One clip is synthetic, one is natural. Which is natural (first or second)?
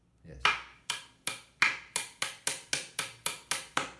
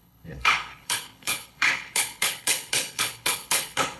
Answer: first